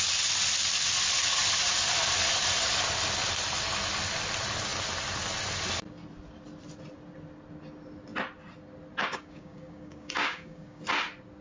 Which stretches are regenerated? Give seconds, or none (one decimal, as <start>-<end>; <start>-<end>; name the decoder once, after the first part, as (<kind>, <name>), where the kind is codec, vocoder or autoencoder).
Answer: 9.0-10.8 (codec, DAC)